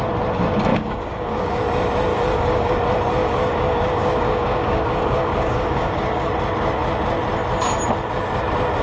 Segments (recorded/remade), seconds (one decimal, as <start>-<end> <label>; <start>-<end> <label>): 0.0-0.7 recorded; 0.7-1.6 remade; 1.6-2.1 recorded; 2.1-2.7 remade; 2.7-3.2 recorded; 3.2-6.3 remade; 6.3-8.8 recorded